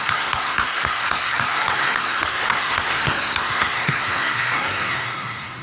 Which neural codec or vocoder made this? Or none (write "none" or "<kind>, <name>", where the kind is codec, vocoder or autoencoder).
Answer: codec, SNAC